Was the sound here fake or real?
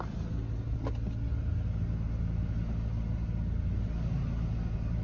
real